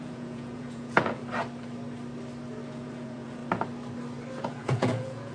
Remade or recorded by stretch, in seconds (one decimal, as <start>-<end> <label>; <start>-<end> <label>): 0.0-1.2 remade; 1.2-2.7 recorded; 2.7-3.4 remade; 3.4-4.4 recorded; 4.4-5.3 remade